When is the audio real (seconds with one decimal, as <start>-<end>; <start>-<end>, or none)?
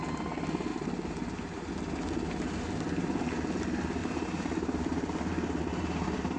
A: 0.0-0.7; 1.7-4.0